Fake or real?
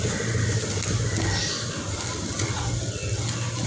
real